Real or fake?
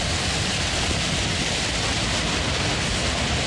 real